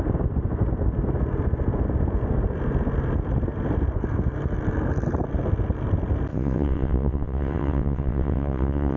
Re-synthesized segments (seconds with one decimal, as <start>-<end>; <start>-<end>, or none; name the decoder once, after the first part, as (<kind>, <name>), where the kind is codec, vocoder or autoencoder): 6.3-9.0 (vocoder, WaveNeXt)